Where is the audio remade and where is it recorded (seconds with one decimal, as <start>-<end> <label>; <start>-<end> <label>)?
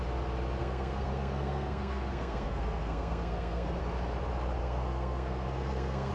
0.0-0.6 recorded; 0.6-3.8 remade; 3.8-4.6 recorded; 4.6-6.1 remade